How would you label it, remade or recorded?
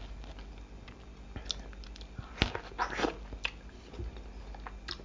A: recorded